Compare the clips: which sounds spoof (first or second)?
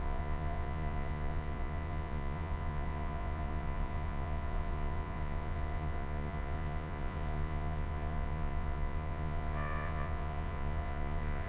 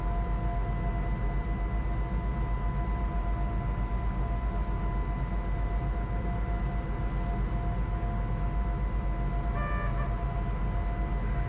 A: first